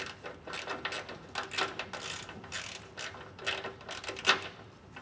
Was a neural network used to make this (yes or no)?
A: no